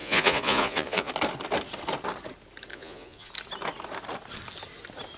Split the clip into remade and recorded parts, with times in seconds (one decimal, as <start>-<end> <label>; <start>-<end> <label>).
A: 0.0-1.1 remade; 1.1-2.7 recorded; 2.7-3.3 remade; 3.3-5.2 recorded